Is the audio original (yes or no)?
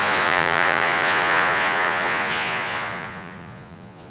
no